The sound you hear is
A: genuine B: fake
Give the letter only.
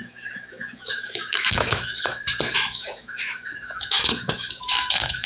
B